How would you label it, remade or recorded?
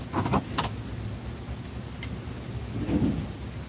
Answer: recorded